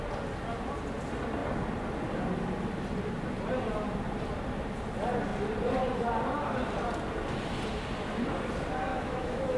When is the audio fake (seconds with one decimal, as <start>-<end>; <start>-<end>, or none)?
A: 8.9-9.6